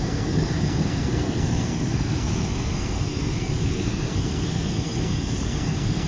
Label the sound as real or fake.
fake